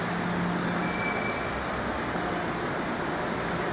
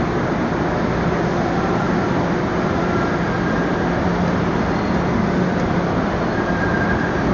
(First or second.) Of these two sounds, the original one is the first